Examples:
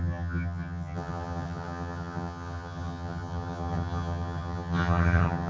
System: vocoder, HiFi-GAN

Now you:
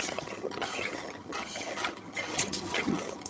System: vocoder, HiFi-GAN